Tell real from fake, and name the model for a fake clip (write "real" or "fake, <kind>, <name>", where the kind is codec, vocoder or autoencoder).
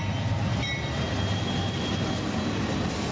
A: real